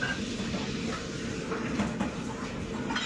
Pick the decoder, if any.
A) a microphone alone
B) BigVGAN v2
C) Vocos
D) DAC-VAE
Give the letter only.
A